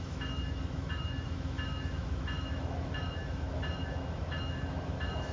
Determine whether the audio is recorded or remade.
remade